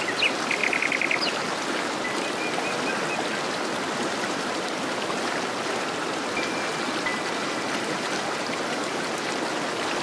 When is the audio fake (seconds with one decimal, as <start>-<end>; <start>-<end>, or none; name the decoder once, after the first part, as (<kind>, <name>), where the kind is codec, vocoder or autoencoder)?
none